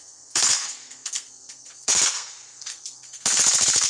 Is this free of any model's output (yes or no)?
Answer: no